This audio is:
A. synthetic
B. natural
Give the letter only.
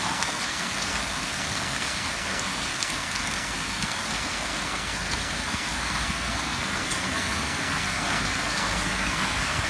A